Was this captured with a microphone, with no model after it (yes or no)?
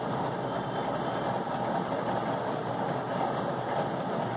yes